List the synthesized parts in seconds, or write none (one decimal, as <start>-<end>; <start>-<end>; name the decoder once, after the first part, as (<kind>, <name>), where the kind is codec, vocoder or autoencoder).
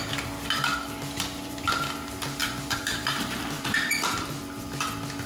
2.4-4.4 (vocoder, BigVGAN v2)